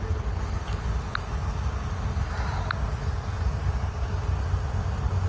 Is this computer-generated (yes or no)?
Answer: no